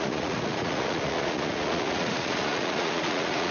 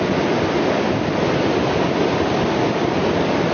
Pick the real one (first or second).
second